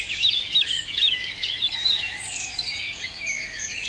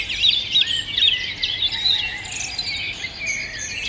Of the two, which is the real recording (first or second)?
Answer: second